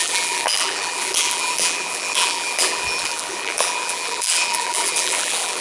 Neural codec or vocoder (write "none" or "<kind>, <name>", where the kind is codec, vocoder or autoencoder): vocoder, BigVGAN v2